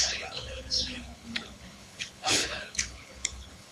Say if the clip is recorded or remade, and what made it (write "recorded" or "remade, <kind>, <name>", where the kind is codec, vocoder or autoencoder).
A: remade, codec, HILCodec